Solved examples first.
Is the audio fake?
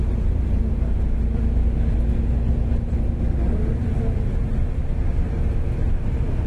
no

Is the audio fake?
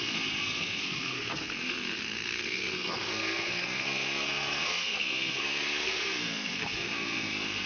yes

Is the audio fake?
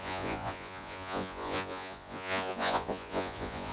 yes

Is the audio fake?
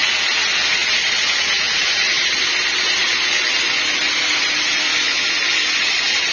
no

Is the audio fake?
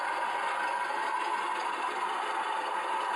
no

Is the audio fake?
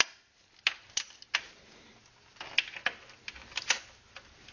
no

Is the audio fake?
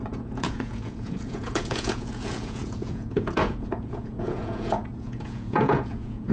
yes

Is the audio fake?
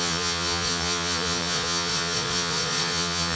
yes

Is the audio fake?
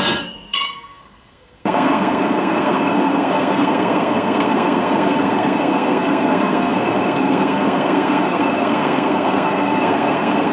yes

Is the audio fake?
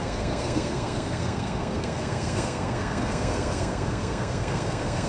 yes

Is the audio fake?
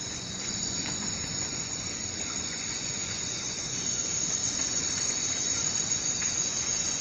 yes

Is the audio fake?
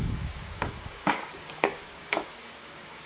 yes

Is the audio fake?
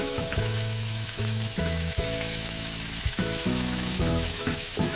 yes